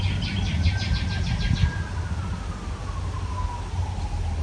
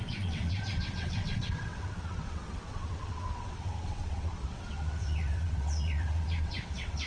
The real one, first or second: first